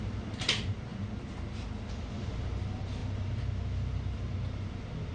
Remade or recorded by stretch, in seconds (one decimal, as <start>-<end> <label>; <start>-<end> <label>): 0.0-5.1 recorded

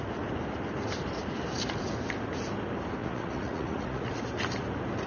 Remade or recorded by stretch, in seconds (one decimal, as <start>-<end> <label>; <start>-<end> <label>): 0.0-3.0 recorded; 3.0-4.1 remade; 4.1-5.1 recorded

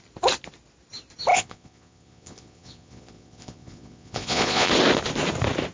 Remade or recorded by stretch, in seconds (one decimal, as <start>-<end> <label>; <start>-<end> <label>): 0.0-1.3 recorded; 1.3-4.7 remade; 4.7-5.7 recorded

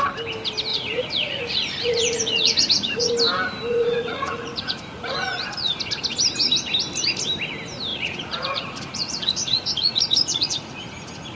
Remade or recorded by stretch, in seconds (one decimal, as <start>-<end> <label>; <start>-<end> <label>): 0.0-0.7 recorded; 0.7-3.1 remade; 3.1-3.7 recorded; 3.7-5.7 remade; 5.7-7.9 recorded; 7.9-10.8 remade; 10.8-11.3 recorded

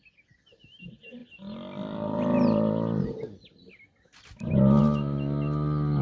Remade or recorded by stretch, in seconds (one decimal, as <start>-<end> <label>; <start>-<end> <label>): 0.0-6.0 recorded

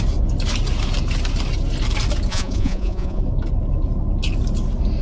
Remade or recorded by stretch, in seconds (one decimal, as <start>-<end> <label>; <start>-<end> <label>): 0.0-2.3 recorded; 2.3-3.2 remade; 3.2-5.0 recorded

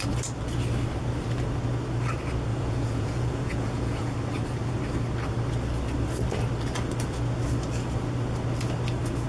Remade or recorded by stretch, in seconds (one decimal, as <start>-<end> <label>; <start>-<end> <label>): 0.0-2.5 recorded; 2.5-4.1 remade; 4.1-9.3 recorded